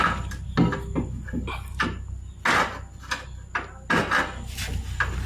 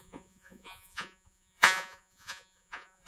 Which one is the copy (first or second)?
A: second